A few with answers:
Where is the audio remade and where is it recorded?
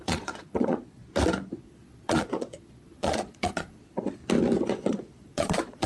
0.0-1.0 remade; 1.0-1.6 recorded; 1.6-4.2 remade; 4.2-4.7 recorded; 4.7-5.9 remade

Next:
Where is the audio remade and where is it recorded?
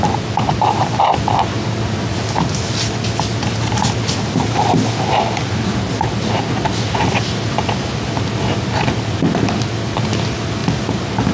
0.0-11.3 recorded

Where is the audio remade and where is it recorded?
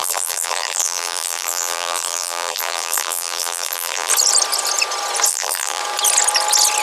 0.0-4.1 remade; 4.1-5.3 recorded; 5.3-5.8 remade; 5.8-6.8 recorded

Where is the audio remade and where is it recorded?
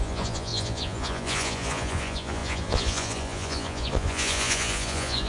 0.0-5.3 remade